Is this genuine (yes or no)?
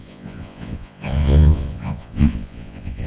no